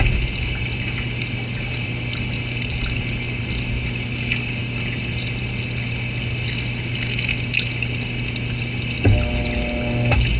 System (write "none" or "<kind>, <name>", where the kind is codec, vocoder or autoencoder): none